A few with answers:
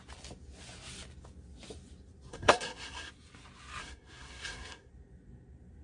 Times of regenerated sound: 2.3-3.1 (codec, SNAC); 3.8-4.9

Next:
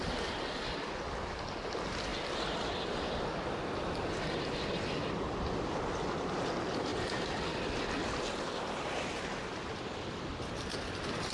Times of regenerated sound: none

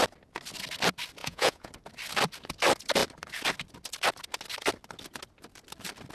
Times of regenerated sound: 1.2-1.7 (vocoder, Vocos)

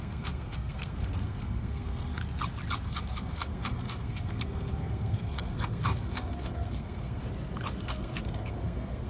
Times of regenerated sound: 0.0-2.2 (codec, SNAC); 2.8-7.2; 7.8-9.1

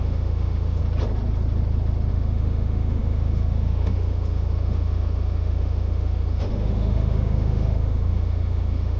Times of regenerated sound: 0.0-0.8 (autoencoder, DAC-VAE); 2.1-9.0

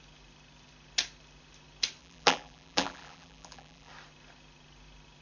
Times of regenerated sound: 2.0-3.9 (vocoder, BigVGAN v2)

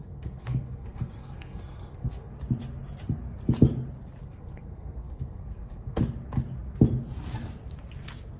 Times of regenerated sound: 0.0-2.3 (codec, SNAC); 4.2-6.0